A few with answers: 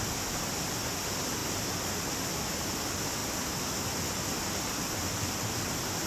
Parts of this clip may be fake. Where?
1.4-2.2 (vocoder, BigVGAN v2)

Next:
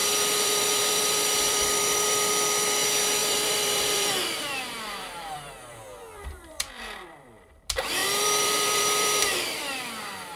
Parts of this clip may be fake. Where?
0.0-2.3 (vocoder, BigVGAN v2); 3.2-7.6; 8.0-9.9

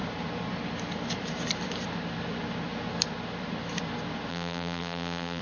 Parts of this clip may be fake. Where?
4.3-5.4 (vocoder, BigVGAN v2)